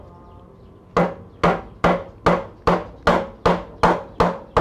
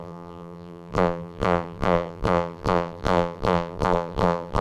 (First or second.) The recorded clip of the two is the first